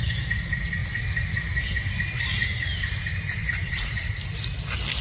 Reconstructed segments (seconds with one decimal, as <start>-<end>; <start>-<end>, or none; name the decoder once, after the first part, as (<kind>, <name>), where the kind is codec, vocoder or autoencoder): 3.4-4.4 (vocoder, BigVGAN v2)